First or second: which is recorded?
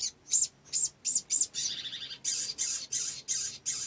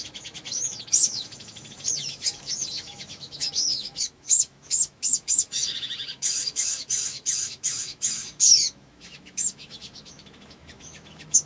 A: first